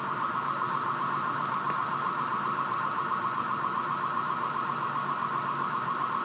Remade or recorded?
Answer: recorded